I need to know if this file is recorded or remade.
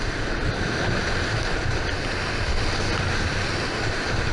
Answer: recorded